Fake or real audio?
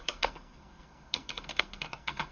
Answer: fake